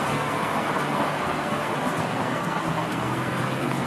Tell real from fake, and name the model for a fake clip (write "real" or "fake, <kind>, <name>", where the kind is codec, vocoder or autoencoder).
fake, codec, SNAC